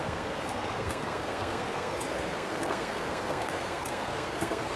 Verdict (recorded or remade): remade